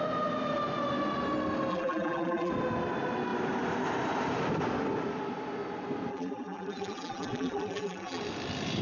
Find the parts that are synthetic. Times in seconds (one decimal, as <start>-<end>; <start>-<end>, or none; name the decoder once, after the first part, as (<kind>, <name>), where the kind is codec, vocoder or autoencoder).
1.7-2.5 (vocoder, BigVGAN v2); 6.1-8.2